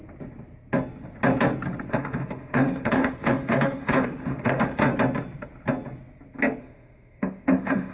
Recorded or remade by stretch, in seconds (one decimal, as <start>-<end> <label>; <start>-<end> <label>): 0.0-1.9 recorded; 1.9-4.9 remade; 4.9-6.6 recorded; 6.6-7.9 remade